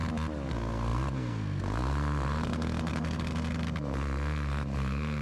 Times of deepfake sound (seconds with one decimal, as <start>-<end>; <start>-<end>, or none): 0.5-5.2